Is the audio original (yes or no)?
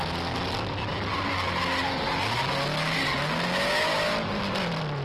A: yes